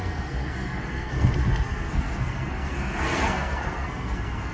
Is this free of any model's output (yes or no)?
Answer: no